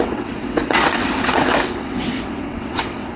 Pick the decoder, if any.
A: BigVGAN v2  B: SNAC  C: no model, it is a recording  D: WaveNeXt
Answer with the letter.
D